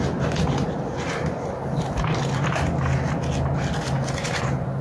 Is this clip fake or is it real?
real